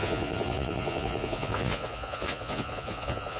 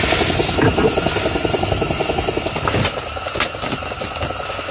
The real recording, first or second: second